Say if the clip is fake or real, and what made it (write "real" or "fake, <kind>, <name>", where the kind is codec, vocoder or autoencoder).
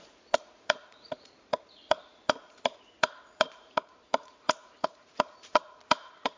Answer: fake, vocoder, Vocos